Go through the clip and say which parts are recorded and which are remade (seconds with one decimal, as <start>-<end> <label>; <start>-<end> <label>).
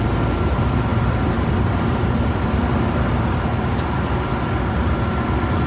0.0-5.7 recorded